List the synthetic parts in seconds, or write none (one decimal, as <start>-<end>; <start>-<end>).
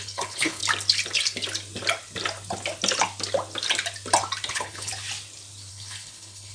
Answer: 0.0-0.6; 4.5-4.9; 5.7-6.5